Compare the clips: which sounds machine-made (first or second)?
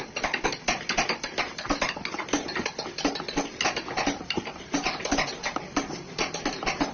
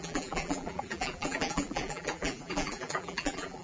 second